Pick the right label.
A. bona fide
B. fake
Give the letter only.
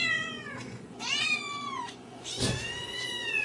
B